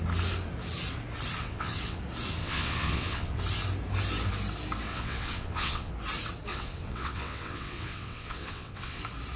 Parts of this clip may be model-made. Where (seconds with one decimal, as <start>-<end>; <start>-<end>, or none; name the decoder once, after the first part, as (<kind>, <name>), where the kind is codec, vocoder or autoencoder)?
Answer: 1.4-2.0 (vocoder, WaveNeXt); 2.4-3.4; 4.9-5.9; 6.5-9.0